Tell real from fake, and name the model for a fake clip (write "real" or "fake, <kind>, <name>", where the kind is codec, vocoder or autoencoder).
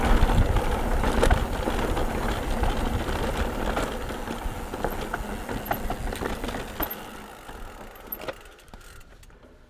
real